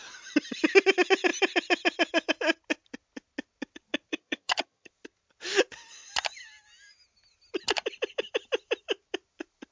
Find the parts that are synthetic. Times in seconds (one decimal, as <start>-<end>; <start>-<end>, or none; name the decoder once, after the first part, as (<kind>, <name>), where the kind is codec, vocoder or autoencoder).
4.1-4.9 (vocoder, HiFi-GAN)